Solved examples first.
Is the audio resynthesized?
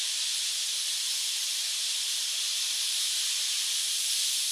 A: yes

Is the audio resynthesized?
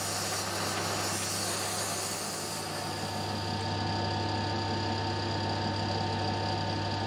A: no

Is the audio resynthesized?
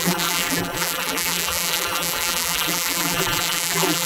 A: yes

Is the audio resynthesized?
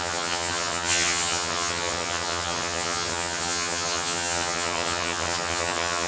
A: yes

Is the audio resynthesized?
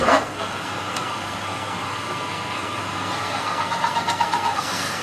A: yes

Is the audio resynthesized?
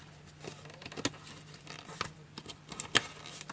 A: no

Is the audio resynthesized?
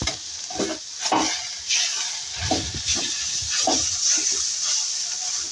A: no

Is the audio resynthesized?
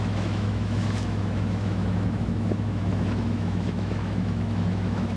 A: yes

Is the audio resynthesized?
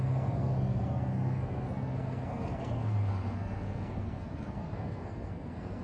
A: yes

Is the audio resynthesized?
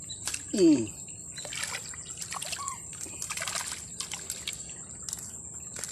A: no